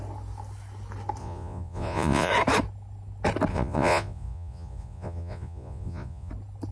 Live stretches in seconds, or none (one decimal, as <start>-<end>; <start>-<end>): 0.0-1.2; 2.3-3.5; 6.3-6.7